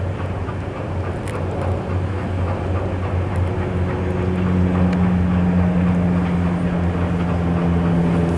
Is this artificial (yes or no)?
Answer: no